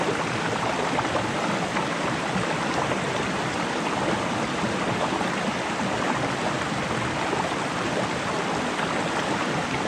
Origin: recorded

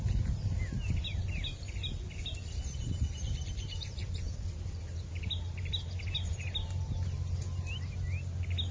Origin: recorded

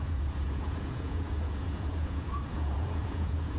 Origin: remade